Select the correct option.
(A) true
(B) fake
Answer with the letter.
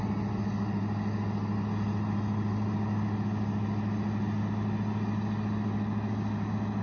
A